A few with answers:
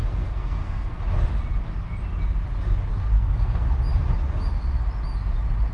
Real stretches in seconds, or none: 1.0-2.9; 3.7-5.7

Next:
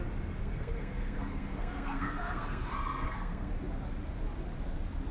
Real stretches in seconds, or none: 0.0-0.4; 3.5-5.1

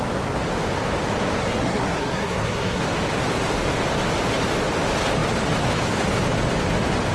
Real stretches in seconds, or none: 0.0-1.4; 2.8-7.1